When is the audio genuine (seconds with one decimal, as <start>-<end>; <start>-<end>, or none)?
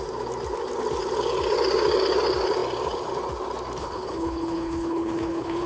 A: 0.0-3.8